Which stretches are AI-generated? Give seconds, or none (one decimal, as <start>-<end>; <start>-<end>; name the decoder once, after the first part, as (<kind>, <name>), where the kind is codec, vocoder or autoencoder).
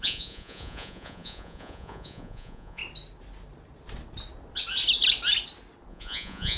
0.0-2.8 (vocoder, Vocos); 5.9-6.6